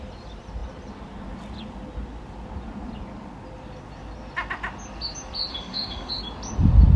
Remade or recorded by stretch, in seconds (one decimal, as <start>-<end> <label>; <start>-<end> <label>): 0.0-5.5 recorded; 5.5-6.1 remade; 6.1-7.0 recorded